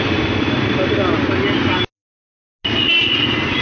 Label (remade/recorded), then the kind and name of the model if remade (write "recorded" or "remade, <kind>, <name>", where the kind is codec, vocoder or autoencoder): recorded